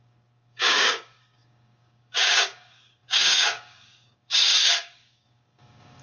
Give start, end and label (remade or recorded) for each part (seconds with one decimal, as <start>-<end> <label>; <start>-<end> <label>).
0.0-6.0 remade